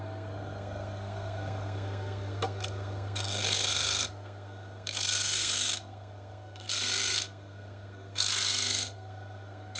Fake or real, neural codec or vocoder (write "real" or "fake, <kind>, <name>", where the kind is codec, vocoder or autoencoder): fake, codec, SNAC